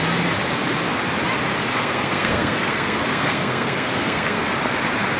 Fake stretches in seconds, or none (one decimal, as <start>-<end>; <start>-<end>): 1.7-4.6